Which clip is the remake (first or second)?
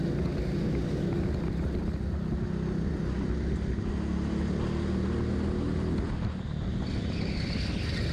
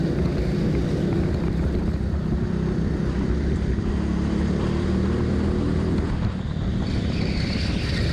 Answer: second